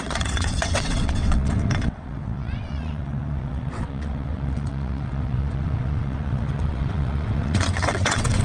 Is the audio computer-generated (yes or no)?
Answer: yes